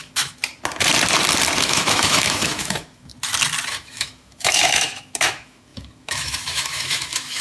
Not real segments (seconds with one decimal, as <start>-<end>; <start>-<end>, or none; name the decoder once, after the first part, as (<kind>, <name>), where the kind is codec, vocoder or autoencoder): 0.0-0.4 (autoencoder, DAC-VAE); 1.6-3.1; 3.7-7.4